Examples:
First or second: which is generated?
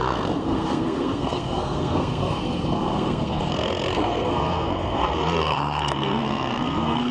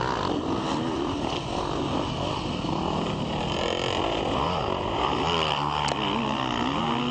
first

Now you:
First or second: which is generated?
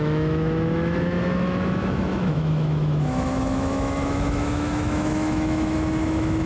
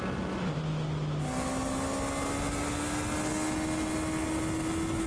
first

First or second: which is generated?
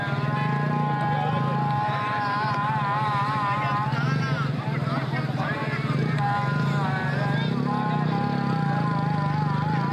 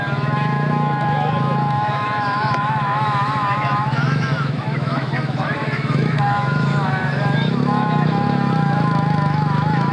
second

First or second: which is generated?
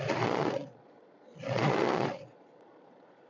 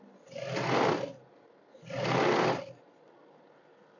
first